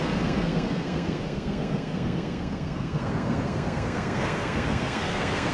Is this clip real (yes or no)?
no